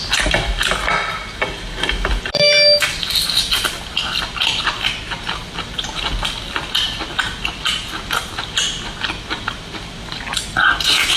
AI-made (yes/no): no